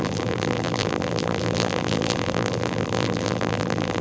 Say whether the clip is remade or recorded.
remade